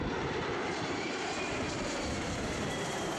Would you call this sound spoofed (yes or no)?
yes